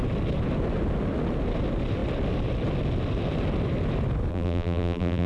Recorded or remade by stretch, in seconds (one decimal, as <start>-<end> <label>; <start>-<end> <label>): 0.0-4.3 recorded; 4.3-5.3 remade